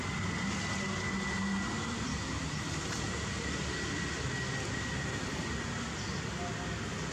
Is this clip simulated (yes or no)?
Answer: no